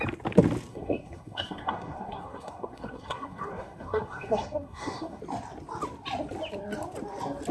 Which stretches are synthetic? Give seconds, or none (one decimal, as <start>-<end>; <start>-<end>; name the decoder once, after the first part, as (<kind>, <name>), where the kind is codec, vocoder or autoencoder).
0.7-5.2 (codec, SNAC)